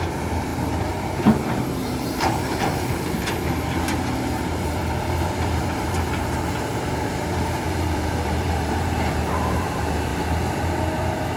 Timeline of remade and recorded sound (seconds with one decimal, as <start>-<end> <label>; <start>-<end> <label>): 0.0-10.1 remade; 10.1-11.4 recorded